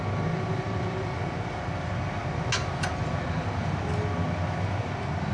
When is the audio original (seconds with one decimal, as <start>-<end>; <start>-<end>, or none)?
0.0-5.3